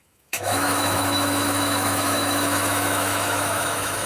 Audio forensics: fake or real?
fake